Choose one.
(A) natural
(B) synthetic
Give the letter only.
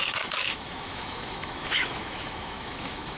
B